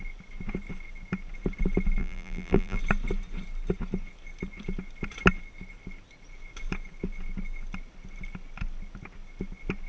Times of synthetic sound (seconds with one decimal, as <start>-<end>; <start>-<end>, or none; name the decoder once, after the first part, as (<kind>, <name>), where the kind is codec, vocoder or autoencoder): 2.0-2.8 (vocoder, BigVGAN v2)